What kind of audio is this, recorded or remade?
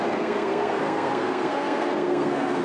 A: remade